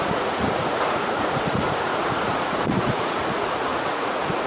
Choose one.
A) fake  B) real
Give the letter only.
A